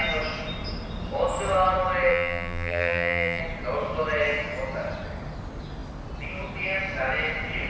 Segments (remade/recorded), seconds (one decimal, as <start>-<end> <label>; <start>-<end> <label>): 0.0-2.1 recorded; 2.1-3.4 remade; 3.4-7.7 recorded